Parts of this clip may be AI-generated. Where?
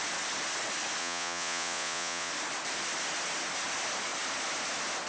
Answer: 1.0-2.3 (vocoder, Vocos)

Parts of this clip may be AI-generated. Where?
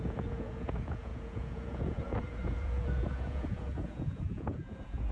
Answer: 0.0-5.1 (vocoder, Vocos)